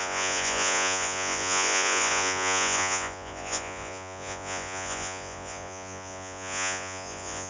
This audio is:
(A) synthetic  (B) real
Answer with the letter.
A